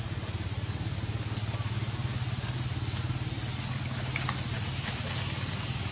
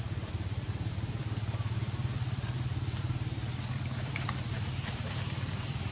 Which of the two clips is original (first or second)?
first